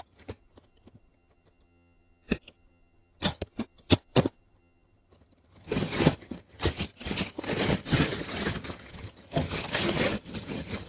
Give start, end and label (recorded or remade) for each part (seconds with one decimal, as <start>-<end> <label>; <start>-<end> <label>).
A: 0.0-10.9 remade